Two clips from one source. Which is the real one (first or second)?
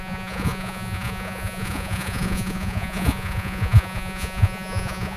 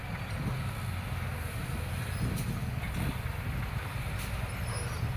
second